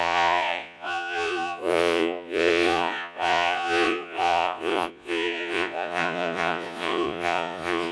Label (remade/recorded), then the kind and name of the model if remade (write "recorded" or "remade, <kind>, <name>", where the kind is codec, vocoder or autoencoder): remade, vocoder, Vocos